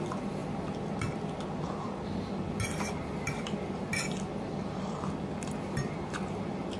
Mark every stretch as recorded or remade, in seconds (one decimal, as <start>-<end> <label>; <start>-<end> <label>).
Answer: 0.0-6.8 recorded